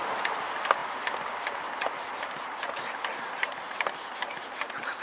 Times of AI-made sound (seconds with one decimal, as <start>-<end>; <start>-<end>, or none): none